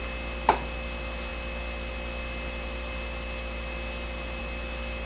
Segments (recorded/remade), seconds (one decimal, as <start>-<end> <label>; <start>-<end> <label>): 0.0-5.1 recorded

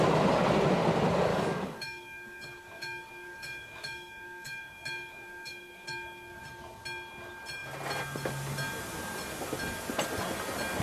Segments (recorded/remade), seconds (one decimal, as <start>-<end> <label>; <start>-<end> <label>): 0.0-1.3 recorded; 1.3-6.4 remade; 6.4-10.8 recorded

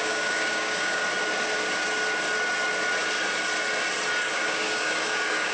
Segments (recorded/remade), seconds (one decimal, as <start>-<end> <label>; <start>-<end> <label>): 0.0-1.0 remade; 1.0-4.3 recorded; 4.3-5.5 remade

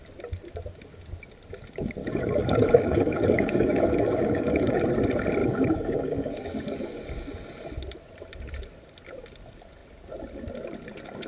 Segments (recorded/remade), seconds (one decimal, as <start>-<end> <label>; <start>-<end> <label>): 0.0-2.0 recorded; 2.0-4.8 remade; 4.8-5.4 recorded; 5.4-7.1 remade; 7.1-11.3 recorded

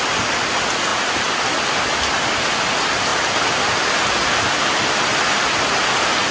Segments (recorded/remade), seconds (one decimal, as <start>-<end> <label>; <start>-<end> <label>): 0.0-6.3 recorded